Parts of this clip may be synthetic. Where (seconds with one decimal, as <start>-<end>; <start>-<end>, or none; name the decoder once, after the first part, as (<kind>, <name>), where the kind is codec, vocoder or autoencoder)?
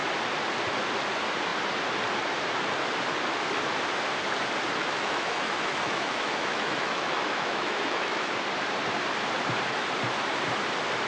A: 4.8-8.3 (autoencoder, DAC-VAE)